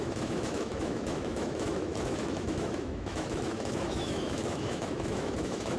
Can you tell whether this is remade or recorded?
remade